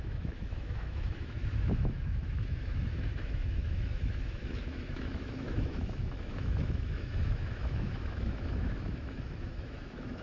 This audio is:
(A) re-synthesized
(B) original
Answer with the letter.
A